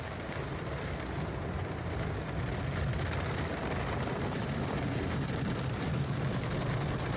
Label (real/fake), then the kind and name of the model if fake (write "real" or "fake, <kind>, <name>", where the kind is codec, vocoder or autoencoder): real